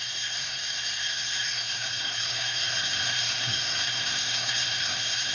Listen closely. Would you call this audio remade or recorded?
remade